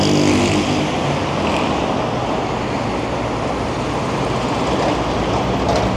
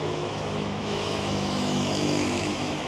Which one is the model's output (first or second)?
second